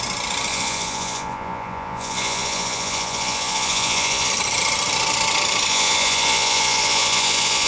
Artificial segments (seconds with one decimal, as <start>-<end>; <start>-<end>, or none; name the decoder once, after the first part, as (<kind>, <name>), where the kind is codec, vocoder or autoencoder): 0.5-4.3 (vocoder, Vocos); 5.7-7.7